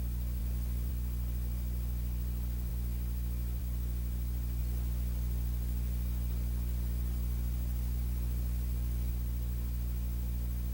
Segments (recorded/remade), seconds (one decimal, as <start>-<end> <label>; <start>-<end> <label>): 0.0-0.4 recorded; 0.4-0.9 remade; 0.9-4.6 recorded; 4.6-9.1 remade; 9.1-10.7 recorded

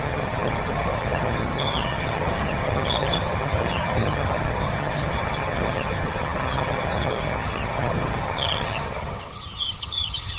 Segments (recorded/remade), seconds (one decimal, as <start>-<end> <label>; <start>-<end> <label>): 0.0-10.4 remade

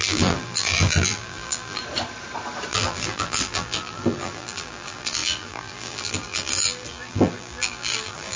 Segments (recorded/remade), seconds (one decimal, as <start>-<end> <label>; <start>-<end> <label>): 0.0-1.8 remade; 1.8-2.7 recorded; 2.7-8.4 remade